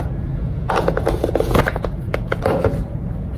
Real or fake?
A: fake